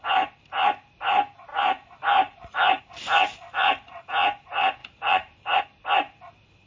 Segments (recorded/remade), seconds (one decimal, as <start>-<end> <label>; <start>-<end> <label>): 0.0-1.5 recorded; 1.5-2.8 remade; 2.8-4.8 recorded; 4.8-5.6 remade; 5.6-6.7 recorded